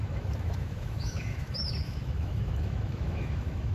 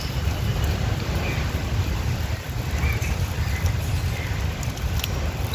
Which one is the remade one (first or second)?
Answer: first